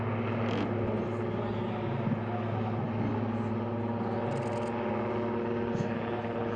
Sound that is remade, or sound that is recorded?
recorded